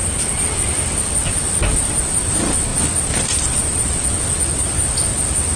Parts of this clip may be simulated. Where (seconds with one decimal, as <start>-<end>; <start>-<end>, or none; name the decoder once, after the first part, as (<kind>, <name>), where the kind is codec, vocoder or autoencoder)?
none